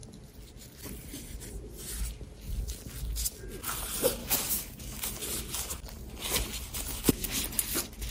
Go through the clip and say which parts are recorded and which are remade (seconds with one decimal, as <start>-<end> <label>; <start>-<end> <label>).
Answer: 0.0-4.2 recorded; 4.2-5.2 remade; 5.2-6.9 recorded; 6.9-7.4 remade; 7.4-8.1 recorded

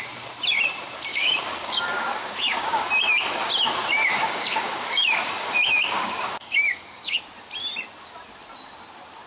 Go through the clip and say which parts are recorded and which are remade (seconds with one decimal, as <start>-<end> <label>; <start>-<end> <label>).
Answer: 0.0-1.1 recorded; 1.1-3.5 remade; 3.5-4.1 recorded; 4.1-7.2 remade; 7.2-9.3 recorded